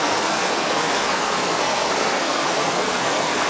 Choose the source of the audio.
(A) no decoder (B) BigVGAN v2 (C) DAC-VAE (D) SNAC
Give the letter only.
D